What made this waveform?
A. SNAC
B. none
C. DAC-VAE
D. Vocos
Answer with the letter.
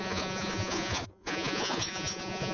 D